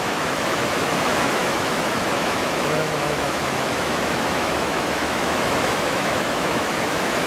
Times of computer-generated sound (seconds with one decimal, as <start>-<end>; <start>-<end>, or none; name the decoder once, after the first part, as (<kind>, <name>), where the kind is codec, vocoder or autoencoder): 0.0-7.3 (autoencoder, DAC-VAE)